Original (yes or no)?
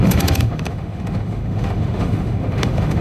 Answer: no